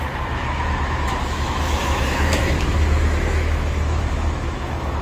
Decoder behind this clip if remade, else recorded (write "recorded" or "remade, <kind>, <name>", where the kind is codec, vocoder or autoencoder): remade, autoencoder, DAC-VAE